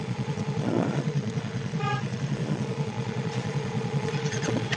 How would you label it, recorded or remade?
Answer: remade